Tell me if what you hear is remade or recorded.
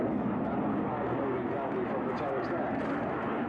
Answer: recorded